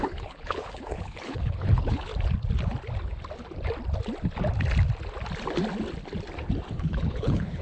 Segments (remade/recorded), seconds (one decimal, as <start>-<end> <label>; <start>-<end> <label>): 0.0-2.1 remade; 2.1-6.7 recorded; 6.7-7.6 remade